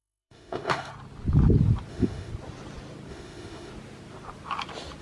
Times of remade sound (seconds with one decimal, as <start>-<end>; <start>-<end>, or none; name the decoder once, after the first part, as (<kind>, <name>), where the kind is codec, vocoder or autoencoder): 0.0-0.9 (autoencoder, DAC-VAE); 1.9-2.3; 3.1-3.7